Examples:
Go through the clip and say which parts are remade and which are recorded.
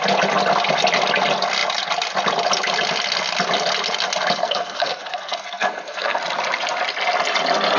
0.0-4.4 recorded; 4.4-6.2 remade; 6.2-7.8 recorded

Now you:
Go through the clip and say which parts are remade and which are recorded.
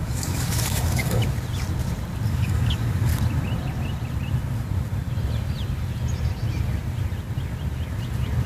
0.0-1.2 remade; 1.2-2.3 recorded; 2.3-3.1 remade; 3.1-8.5 recorded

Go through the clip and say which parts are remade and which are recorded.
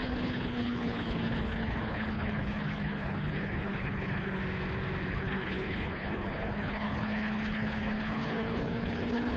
0.0-4.4 remade; 4.4-5.1 recorded; 5.1-9.4 remade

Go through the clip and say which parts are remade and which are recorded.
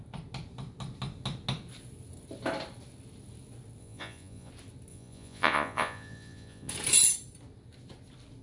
0.0-3.8 recorded; 3.8-4.5 remade; 4.5-4.9 recorded; 4.9-6.7 remade; 6.7-8.4 recorded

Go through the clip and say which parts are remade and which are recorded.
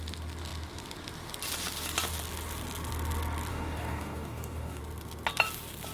0.0-3.5 recorded; 3.5-4.8 remade; 4.8-5.9 recorded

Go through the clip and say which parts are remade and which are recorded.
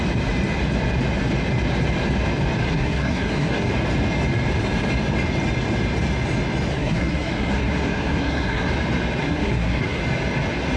0.0-2.6 recorded; 2.6-3.7 remade; 3.7-6.7 recorded; 6.7-8.7 remade; 8.7-9.2 recorded; 9.2-10.0 remade; 10.0-10.8 recorded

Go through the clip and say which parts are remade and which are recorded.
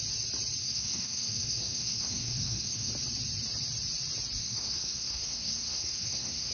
0.0-0.6 recorded; 0.6-2.9 remade; 2.9-4.4 recorded; 4.4-6.5 remade